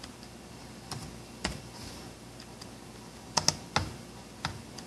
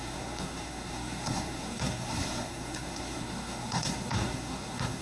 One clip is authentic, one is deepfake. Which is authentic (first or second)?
first